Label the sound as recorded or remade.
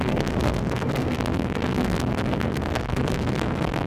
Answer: remade